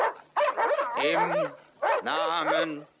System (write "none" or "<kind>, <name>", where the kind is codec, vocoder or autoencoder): none